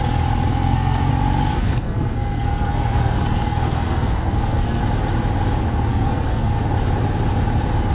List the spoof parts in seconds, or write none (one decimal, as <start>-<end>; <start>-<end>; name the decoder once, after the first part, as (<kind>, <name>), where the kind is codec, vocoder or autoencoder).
0.5-1.1 (codec, SNAC); 1.5-4.8; 5.9-6.6